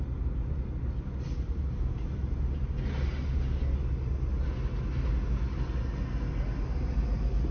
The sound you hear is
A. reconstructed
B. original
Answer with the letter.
B